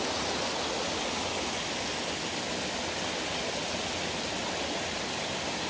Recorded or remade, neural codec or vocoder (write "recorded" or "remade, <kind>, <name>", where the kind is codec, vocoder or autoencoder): recorded